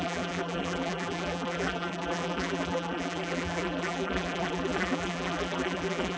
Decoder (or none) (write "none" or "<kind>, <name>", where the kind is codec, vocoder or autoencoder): vocoder, BigVGAN v2